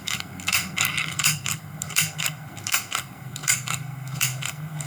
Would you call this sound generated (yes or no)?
yes